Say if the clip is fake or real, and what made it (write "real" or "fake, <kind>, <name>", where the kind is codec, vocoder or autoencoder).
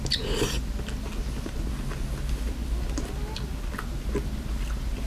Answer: real